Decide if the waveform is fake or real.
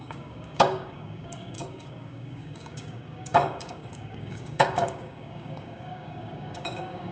fake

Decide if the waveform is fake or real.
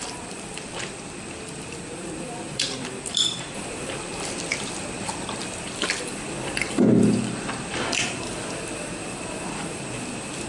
fake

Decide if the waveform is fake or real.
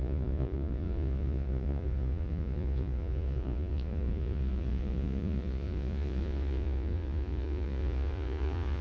fake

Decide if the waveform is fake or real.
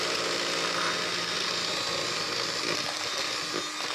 real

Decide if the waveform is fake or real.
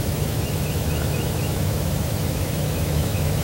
fake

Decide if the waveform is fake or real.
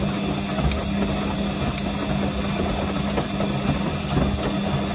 real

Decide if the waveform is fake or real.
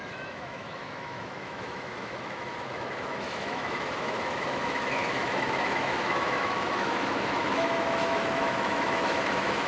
fake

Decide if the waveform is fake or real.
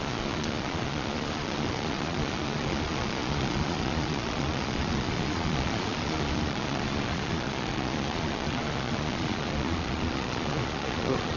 fake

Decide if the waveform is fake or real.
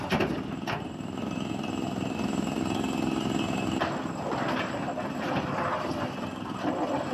real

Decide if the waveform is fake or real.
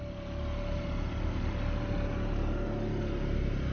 real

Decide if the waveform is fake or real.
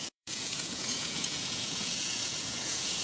fake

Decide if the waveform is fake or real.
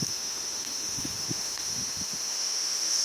fake